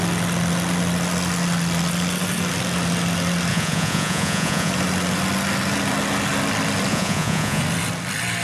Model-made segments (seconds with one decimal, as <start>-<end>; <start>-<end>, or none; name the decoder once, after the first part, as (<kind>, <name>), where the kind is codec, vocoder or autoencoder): 3.5-4.7 (vocoder, Vocos); 6.9-7.6